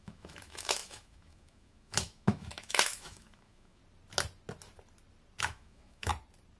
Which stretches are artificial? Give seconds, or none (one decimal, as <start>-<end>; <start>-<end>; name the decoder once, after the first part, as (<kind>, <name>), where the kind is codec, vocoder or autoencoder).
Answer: 0.0-3.8 (autoencoder, DAC-VAE); 5.4-6.1